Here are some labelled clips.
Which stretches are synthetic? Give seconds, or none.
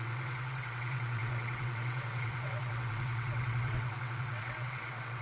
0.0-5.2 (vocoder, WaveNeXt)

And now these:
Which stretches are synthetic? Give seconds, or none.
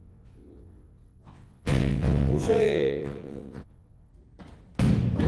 0.0-4.1 (vocoder, WaveNeXt)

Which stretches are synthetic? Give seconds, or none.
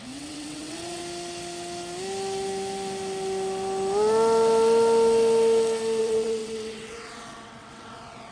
0.0-1.0 (vocoder, WaveNeXt); 6.0-8.3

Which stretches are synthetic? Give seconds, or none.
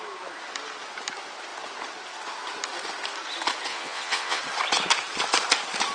3.7-4.4 (vocoder, WaveNeXt)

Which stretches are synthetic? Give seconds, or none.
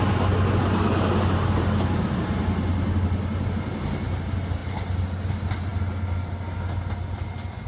none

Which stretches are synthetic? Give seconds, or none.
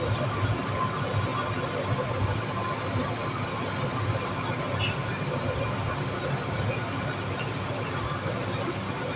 none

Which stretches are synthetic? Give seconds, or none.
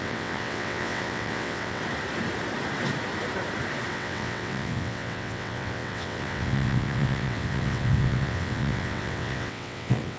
0.0-1.8 (vocoder, WaveNeXt); 3.9-10.2